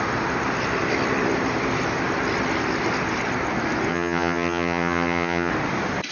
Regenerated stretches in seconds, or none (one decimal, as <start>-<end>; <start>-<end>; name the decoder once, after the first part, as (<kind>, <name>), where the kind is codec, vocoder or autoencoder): 3.9-5.5 (vocoder, HiFi-GAN)